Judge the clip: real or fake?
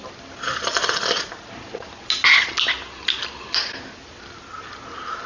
real